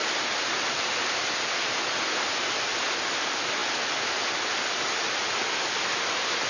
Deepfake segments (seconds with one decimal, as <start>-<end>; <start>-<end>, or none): none

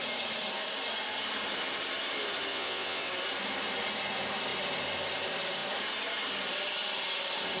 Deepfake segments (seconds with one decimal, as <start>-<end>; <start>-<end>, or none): 2.5-3.1

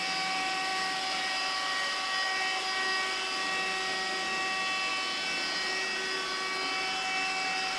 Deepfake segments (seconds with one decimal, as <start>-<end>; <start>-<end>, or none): none

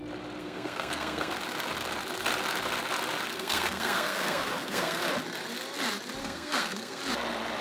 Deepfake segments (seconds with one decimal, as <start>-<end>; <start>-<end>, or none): 0.4-1.3; 3.3-5.0; 6.2-7.0

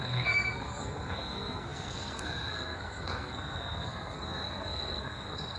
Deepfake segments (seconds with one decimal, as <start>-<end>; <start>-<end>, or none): 0.0-5.6